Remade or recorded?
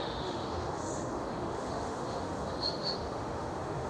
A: remade